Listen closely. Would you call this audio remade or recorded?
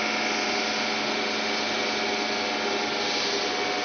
recorded